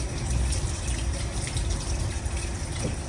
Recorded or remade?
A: remade